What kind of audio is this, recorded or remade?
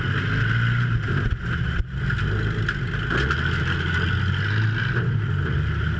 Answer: recorded